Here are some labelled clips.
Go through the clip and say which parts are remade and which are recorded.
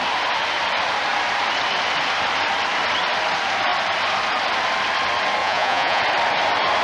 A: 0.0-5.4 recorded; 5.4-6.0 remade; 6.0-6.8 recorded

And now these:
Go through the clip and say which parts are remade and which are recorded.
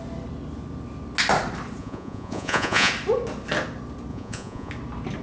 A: 0.0-1.8 recorded; 1.8-2.9 remade; 2.9-4.1 recorded; 4.1-4.7 remade; 4.7-5.2 recorded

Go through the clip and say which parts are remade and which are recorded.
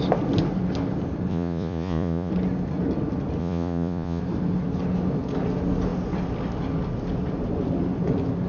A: 0.0-1.3 recorded; 1.3-2.3 remade; 2.3-3.4 recorded; 3.4-4.2 remade; 4.2-8.5 recorded